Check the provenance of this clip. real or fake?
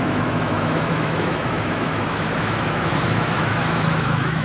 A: fake